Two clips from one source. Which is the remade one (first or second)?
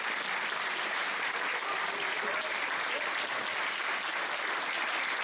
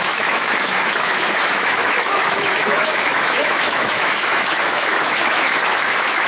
second